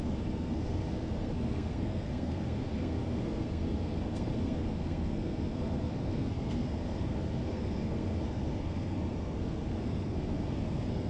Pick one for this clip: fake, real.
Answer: fake